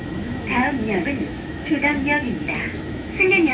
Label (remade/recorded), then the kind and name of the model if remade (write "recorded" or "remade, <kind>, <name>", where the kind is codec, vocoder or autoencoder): remade, autoencoder, DAC-VAE